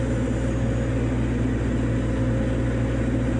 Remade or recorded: recorded